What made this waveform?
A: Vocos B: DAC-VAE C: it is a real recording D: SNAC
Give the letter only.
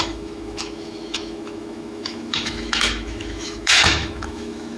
B